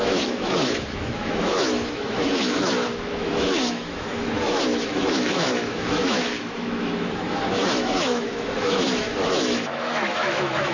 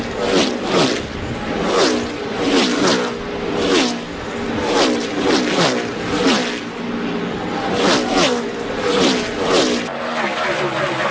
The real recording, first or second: second